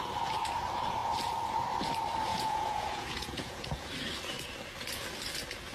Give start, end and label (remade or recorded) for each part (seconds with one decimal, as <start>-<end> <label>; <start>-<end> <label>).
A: 0.0-2.3 recorded; 2.3-3.9 remade; 3.9-5.7 recorded